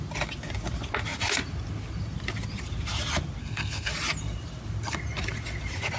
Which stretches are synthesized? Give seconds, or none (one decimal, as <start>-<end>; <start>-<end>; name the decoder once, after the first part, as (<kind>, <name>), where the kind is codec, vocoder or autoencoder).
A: 3.4-3.9 (codec, SNAC)